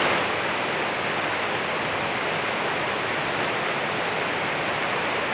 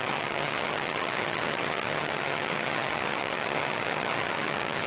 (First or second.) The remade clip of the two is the second